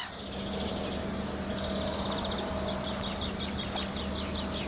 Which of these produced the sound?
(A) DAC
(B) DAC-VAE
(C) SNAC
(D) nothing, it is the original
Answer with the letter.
D